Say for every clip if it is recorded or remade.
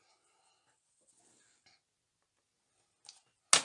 recorded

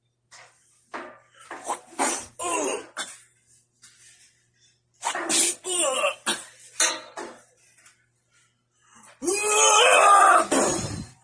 remade